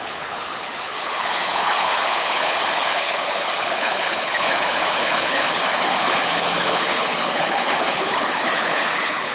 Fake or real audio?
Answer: fake